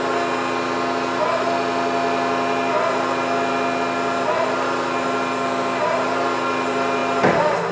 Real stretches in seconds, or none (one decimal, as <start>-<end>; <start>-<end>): 0.0-7.7